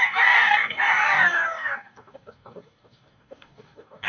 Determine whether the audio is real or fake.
fake